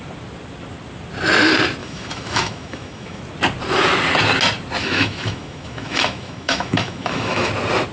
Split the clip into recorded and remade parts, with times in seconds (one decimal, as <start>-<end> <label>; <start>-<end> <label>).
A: 0.0-1.8 recorded; 1.8-3.2 remade; 3.2-4.8 recorded; 4.8-7.5 remade; 7.5-7.9 recorded